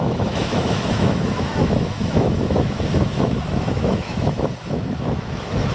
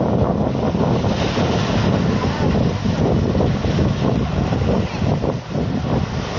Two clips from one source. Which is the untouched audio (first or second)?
second